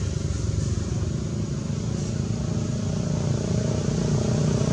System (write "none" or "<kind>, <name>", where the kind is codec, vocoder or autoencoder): none